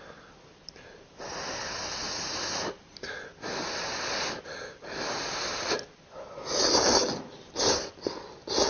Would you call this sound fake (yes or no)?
no